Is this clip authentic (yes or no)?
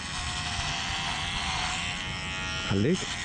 yes